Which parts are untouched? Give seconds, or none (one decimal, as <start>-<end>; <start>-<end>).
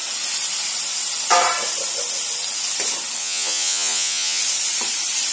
0.0-3.2; 4.4-5.3